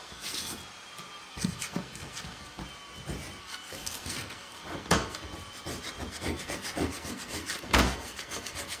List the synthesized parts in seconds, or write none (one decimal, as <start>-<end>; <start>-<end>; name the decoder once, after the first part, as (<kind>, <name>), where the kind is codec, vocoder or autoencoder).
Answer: 0.0-0.6 (codec, SNAC); 1.3-2.6; 3.4-5.3; 6.1-8.8